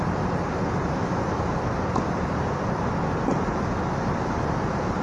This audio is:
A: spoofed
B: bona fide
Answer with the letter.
B